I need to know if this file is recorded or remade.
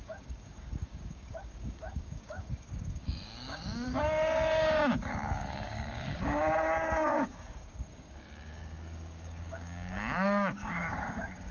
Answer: remade